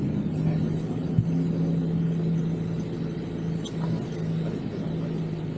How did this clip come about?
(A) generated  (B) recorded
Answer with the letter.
B